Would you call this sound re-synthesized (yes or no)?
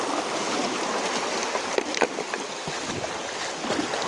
no